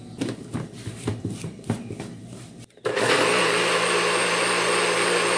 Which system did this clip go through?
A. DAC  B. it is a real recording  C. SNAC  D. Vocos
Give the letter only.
B